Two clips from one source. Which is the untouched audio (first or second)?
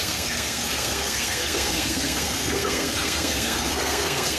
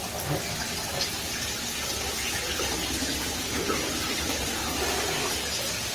second